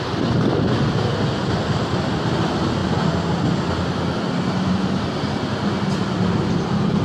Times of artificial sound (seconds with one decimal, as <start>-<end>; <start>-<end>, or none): none